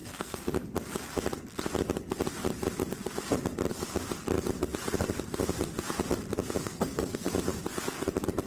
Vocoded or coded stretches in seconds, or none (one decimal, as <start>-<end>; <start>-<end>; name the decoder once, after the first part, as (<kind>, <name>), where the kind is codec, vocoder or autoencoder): 0.0-0.5 (codec, SNAC); 6.6-7.3